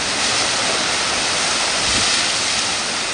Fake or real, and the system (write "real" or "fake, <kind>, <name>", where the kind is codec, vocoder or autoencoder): real